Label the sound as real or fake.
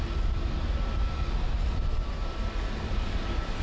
real